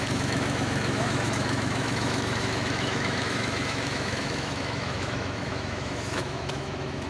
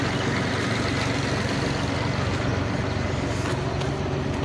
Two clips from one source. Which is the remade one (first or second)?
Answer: first